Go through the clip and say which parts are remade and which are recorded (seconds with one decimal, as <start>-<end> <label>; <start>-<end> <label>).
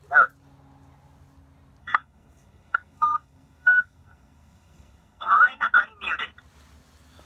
0.0-1.8 recorded; 1.8-5.7 remade; 5.7-7.3 recorded